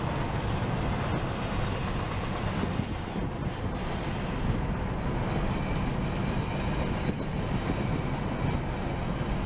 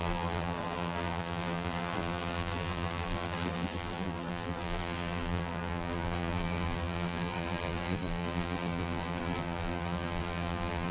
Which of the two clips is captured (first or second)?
first